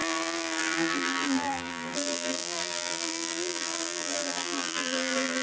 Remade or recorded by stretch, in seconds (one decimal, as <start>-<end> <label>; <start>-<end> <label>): 0.0-5.4 remade